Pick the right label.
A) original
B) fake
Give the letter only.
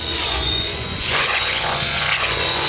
B